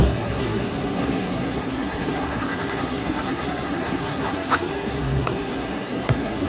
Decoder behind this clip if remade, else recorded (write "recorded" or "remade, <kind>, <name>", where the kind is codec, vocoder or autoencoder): remade, codec, SNAC